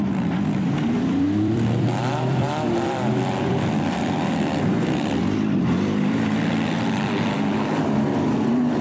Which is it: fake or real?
fake